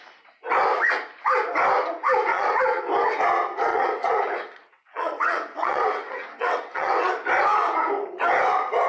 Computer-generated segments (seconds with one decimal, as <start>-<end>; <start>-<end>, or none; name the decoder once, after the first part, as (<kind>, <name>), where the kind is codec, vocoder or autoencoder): 2.3-2.8 (vocoder, WaveNeXt); 3.7-7.1